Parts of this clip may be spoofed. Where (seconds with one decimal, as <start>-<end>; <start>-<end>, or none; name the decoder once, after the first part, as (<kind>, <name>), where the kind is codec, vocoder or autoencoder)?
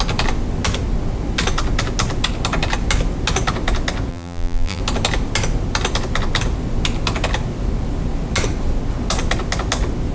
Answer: 4.1-4.8 (vocoder, BigVGAN v2)